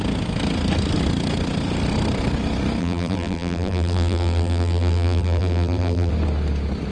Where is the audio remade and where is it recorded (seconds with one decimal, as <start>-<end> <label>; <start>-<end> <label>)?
0.0-2.8 recorded; 2.8-6.1 remade; 6.1-6.9 recorded